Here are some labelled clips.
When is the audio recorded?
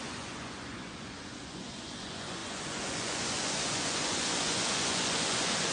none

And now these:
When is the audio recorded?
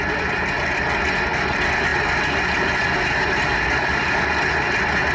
0.0-5.1